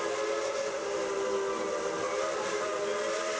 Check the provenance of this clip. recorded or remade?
recorded